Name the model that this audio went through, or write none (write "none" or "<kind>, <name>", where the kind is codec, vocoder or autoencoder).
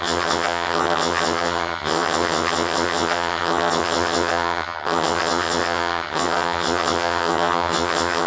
vocoder, HiFi-GAN